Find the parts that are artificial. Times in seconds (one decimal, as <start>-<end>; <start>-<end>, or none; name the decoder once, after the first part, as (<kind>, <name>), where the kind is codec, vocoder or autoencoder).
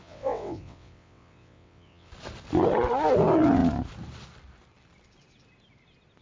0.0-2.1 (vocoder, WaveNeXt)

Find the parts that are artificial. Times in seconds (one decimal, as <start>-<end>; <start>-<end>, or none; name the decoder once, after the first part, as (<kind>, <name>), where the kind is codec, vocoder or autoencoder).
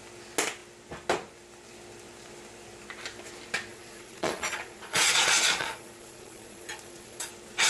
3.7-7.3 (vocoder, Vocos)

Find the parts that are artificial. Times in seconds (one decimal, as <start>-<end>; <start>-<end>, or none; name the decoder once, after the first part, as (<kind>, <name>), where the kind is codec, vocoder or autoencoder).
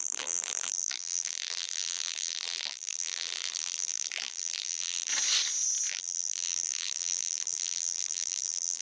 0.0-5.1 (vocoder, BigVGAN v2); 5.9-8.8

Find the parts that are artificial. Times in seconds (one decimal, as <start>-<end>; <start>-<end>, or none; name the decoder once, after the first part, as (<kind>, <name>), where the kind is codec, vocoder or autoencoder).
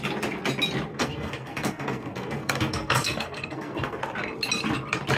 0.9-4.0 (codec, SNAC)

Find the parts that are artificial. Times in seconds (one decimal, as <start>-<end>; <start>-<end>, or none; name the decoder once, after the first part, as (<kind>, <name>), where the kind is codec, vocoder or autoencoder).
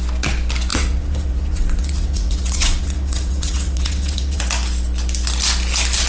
0.7-4.4 (vocoder, WaveNeXt)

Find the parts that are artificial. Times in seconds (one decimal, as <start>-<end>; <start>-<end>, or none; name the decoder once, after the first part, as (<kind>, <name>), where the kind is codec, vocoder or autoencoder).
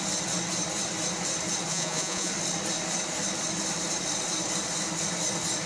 1.7-2.3 (vocoder, Vocos)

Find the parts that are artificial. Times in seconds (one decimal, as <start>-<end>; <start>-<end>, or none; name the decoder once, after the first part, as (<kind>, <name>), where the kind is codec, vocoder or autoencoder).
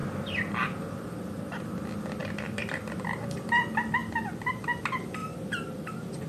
2.2-2.8 (vocoder, BigVGAN v2); 5.2-6.3